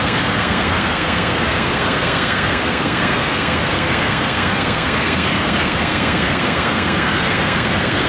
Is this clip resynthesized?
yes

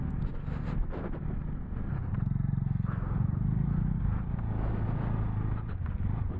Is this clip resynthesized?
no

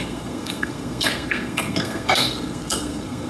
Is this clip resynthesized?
yes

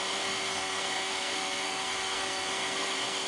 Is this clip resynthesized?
yes